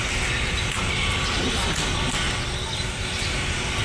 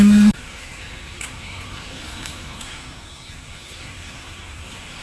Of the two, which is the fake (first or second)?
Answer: second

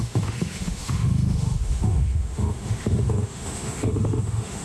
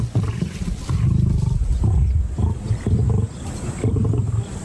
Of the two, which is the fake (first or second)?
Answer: first